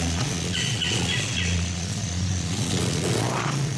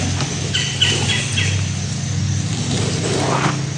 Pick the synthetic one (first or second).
first